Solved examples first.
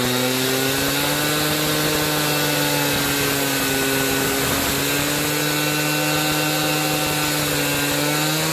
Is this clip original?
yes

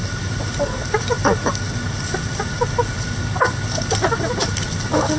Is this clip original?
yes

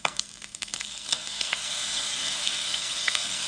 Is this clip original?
no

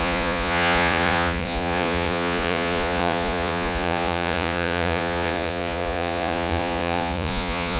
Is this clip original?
no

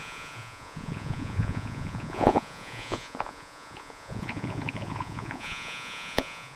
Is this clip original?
no